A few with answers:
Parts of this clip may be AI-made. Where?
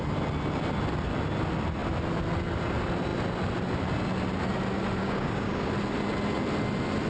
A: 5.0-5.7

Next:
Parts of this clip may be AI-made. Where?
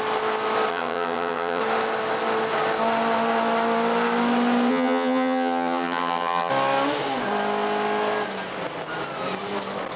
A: 0.7-1.6; 4.7-6.5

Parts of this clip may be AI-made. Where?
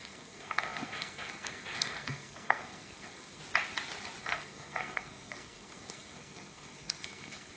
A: 0.0-3.4; 4.2-7.6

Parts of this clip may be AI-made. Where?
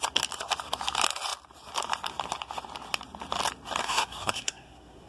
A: 3.8-5.1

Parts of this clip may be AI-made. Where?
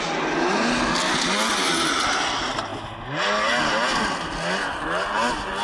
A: none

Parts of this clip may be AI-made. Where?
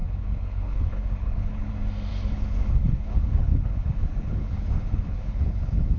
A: 0.0-1.7; 2.1-6.0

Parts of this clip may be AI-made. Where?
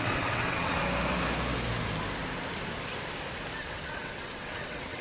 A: 0.0-0.8; 3.6-5.0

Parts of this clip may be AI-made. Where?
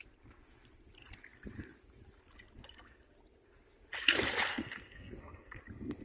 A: 4.5-5.6